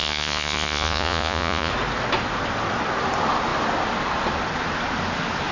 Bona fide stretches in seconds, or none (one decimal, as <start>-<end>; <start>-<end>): 1.7-5.5